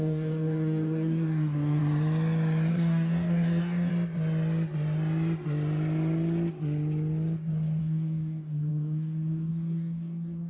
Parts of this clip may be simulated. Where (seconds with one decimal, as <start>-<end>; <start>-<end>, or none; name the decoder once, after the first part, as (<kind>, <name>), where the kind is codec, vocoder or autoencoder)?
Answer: 0.0-1.8 (codec, DAC); 2.7-3.9; 7.8-10.5